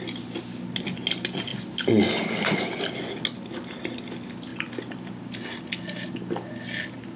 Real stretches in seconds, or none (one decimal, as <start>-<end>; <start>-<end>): 0.0-7.2